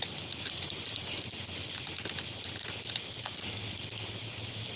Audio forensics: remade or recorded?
recorded